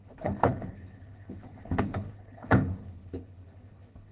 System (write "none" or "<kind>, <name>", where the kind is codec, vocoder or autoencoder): codec, HILCodec